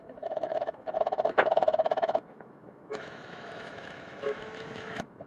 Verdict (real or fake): fake